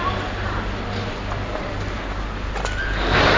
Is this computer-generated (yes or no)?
no